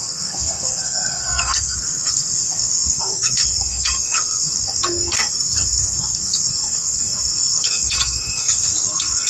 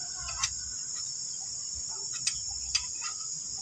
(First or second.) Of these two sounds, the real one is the second